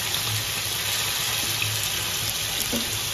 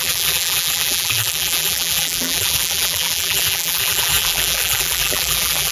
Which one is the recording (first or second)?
first